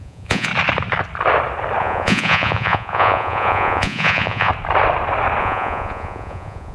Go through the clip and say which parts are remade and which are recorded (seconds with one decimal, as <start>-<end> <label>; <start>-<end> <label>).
0.0-0.5 remade; 0.5-1.8 recorded; 1.8-4.5 remade; 4.5-5.4 recorded; 5.4-6.7 remade